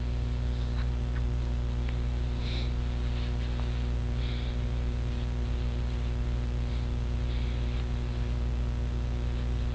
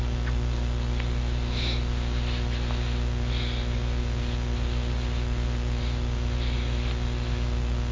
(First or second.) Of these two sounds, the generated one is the first